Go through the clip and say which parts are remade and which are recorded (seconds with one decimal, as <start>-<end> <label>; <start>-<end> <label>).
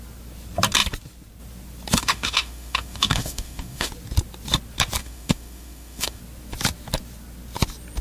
0.0-2.0 recorded; 2.0-3.9 remade; 3.9-5.0 recorded; 5.0-6.2 remade; 6.2-8.0 recorded